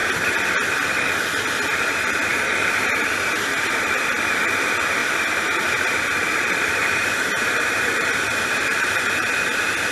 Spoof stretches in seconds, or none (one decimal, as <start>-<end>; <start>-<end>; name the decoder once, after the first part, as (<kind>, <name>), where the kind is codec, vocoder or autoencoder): 2.3-4.1 (vocoder, BigVGAN v2); 5.0-9.3